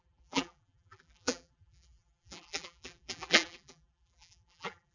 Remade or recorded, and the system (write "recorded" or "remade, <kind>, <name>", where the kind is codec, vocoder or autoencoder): remade, vocoder, BigVGAN v2